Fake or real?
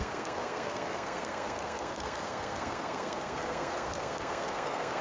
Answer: fake